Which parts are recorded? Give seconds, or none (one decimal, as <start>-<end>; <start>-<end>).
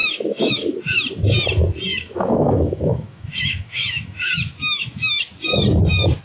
0.8-1.9; 5.2-6.2